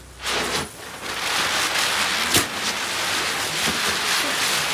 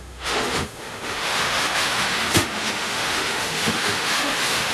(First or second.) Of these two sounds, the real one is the first